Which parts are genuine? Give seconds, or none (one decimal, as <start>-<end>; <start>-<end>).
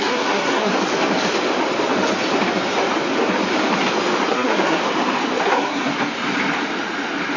0.7-4.3; 4.8-5.4; 5.9-7.4